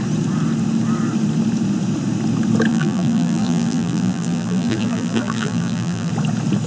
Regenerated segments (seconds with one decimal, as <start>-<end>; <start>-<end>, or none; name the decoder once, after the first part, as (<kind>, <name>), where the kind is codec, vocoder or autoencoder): 2.7-6.1 (vocoder, BigVGAN v2)